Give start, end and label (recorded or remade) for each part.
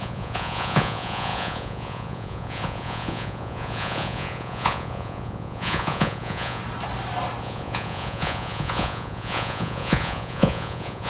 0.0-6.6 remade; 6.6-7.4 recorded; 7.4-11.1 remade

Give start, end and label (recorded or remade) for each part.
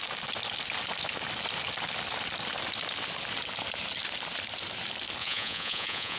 0.0-5.2 recorded; 5.2-6.2 remade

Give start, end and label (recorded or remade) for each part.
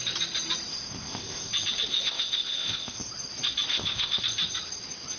0.0-0.7 recorded; 0.7-1.5 remade; 1.5-1.9 recorded; 1.9-3.1 remade; 3.1-3.7 recorded; 3.7-4.2 remade; 4.2-5.2 recorded